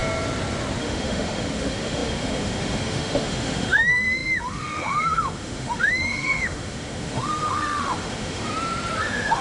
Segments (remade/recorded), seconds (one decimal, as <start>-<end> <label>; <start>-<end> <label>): 0.0-0.8 recorded; 0.8-8.5 remade; 8.5-9.0 recorded; 9.0-9.4 remade